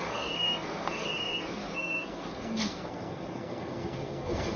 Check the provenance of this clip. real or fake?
fake